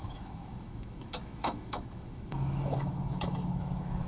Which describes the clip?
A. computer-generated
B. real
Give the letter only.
A